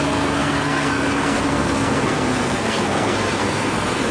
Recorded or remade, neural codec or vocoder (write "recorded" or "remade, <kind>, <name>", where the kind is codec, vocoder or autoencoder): remade, codec, SNAC